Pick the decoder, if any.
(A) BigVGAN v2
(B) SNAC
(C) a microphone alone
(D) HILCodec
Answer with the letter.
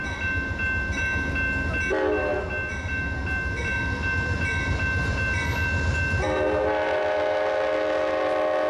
C